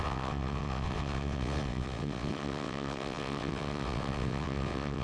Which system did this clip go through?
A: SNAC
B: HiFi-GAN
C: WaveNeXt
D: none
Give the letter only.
C